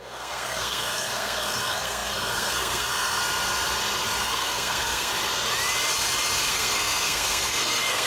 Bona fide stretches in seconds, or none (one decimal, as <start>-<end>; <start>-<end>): 3.2-4.2; 5.1-6.5